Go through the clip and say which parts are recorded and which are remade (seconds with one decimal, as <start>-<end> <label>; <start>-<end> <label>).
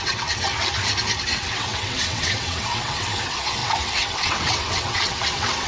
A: 0.0-0.5 remade; 0.5-1.2 recorded; 1.2-5.7 remade